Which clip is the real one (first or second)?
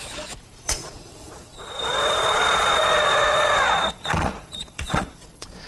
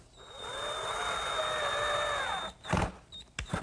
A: second